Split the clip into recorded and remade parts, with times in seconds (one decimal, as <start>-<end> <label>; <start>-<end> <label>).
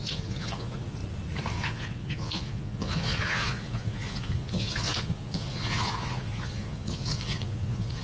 0.0-1.0 remade; 1.0-1.5 recorded; 1.5-8.0 remade